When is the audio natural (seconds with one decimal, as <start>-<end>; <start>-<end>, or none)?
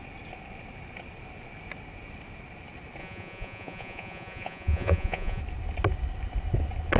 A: 0.0-3.0; 5.4-7.0